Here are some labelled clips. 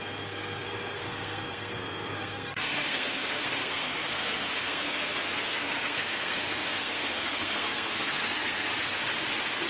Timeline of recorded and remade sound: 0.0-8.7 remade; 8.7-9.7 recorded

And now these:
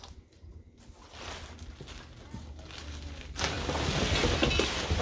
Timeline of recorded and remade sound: 0.0-5.0 recorded

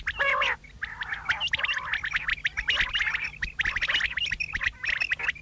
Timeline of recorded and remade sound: 0.0-5.4 recorded

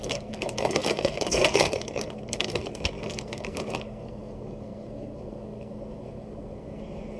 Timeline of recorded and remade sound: 0.0-7.2 remade

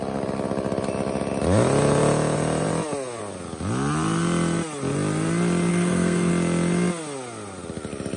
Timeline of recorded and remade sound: 0.0-5.7 recorded; 5.7-6.3 remade; 6.3-8.2 recorded

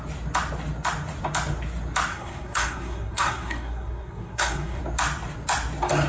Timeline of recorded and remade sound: 0.0-2.1 recorded; 2.1-4.8 remade; 4.8-6.1 recorded